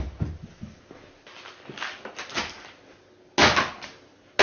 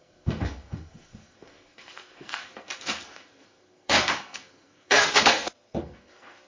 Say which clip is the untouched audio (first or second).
first